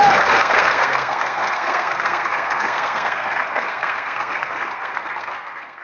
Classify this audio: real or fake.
fake